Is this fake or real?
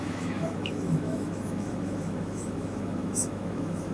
fake